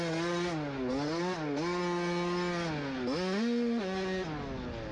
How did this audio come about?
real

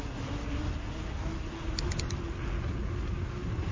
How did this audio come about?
real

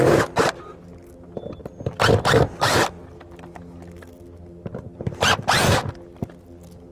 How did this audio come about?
real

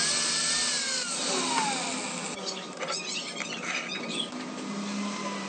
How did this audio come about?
real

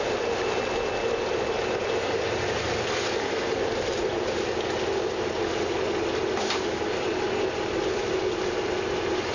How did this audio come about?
real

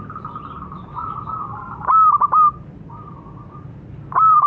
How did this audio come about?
real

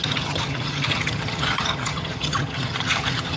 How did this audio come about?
fake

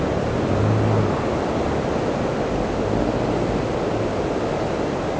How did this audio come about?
real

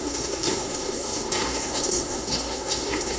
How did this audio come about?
fake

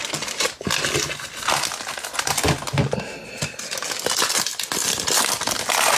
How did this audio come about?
real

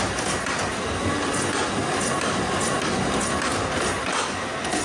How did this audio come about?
real